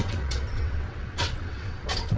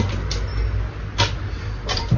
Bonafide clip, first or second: second